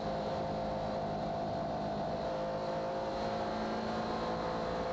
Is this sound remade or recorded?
recorded